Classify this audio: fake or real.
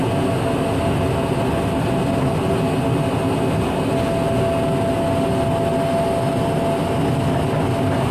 real